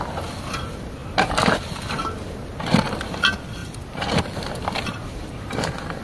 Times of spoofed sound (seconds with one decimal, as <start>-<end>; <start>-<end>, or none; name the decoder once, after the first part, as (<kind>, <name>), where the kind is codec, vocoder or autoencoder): 3.6-4.2 (vocoder, BigVGAN v2); 5.0-5.6